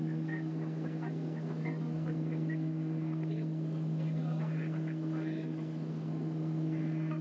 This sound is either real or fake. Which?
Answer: fake